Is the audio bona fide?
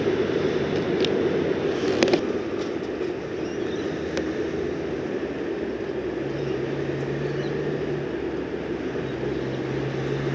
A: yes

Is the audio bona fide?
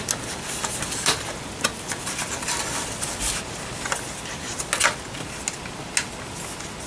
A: yes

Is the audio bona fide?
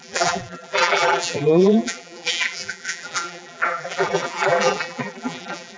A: no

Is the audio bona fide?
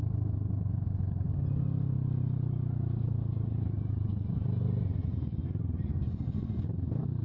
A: yes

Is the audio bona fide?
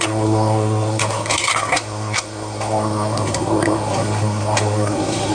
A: no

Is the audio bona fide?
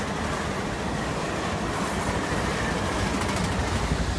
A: yes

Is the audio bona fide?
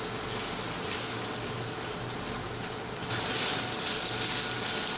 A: yes